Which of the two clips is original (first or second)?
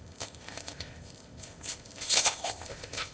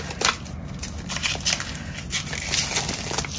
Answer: second